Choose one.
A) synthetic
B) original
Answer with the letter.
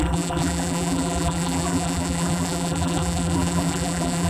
A